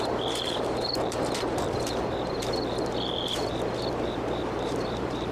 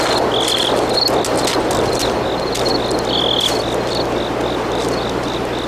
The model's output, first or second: first